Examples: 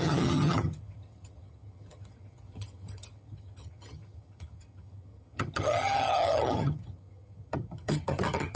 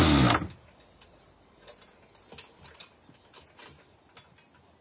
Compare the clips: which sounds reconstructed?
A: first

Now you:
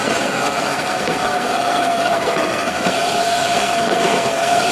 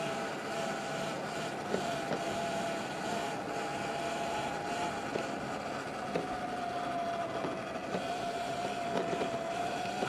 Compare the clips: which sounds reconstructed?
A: first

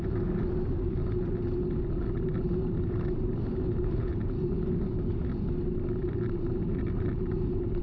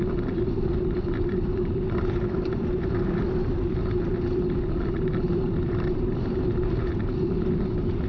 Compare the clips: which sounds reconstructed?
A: second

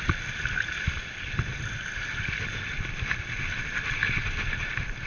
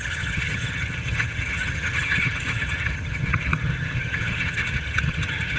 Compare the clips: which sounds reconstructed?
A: second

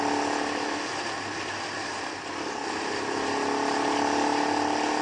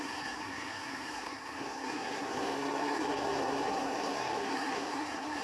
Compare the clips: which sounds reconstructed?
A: second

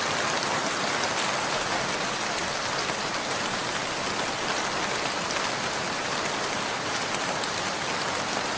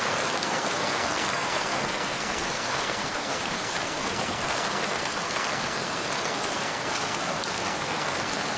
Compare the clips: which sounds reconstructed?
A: second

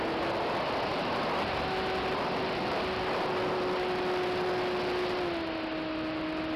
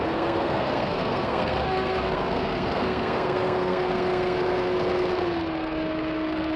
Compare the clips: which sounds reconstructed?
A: second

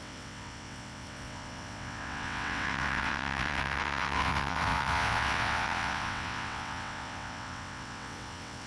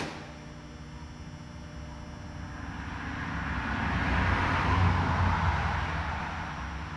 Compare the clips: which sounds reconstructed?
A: first